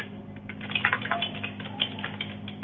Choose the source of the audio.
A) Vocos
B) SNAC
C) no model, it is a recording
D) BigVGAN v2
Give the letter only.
C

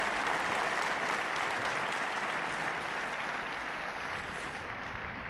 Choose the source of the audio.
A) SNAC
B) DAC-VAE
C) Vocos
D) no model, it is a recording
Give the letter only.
D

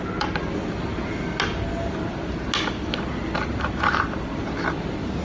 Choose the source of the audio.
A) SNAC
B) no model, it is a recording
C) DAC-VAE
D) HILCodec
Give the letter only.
B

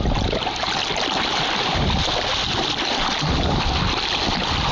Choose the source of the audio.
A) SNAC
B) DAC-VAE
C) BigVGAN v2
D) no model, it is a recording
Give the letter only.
D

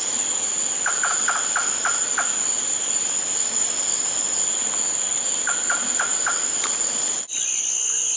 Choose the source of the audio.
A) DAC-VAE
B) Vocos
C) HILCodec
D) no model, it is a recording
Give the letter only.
D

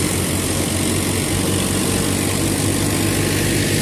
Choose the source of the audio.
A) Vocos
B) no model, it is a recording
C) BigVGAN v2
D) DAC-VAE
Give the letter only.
B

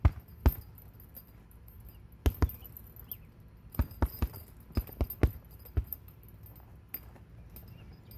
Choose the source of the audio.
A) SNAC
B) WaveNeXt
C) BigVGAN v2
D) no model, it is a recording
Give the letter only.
D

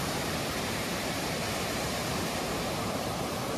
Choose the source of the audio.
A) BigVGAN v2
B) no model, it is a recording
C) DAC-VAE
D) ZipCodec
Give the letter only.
A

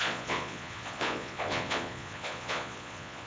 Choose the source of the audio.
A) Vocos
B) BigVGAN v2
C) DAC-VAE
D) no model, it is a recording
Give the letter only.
A